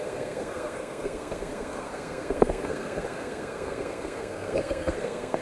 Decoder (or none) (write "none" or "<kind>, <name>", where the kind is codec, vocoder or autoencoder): codec, SNAC